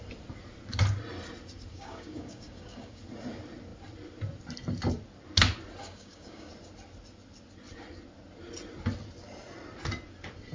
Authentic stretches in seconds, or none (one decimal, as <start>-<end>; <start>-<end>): 0.0-1.7; 3.0-5.8; 6.5-10.5